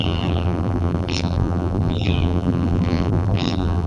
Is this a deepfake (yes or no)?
yes